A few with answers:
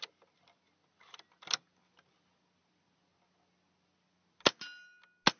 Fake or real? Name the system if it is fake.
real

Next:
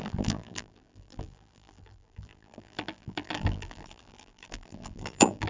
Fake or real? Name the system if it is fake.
fake, vocoder, BigVGAN v2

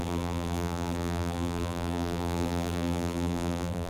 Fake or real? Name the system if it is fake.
fake, vocoder, BigVGAN v2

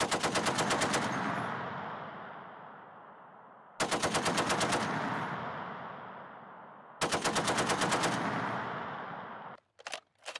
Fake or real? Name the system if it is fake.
real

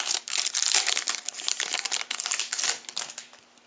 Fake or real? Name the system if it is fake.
real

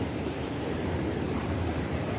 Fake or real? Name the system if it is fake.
fake, vocoder, BigVGAN v2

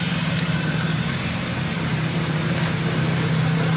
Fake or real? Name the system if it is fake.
fake, vocoder, BigVGAN v2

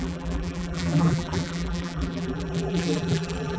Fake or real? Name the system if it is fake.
fake, vocoder, BigVGAN v2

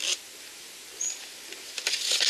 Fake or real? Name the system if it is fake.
real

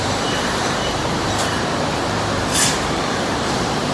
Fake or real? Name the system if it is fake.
fake, vocoder, BigVGAN v2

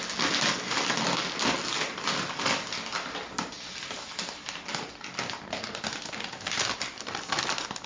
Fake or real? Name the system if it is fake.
real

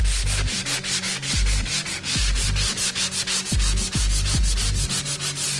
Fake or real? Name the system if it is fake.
real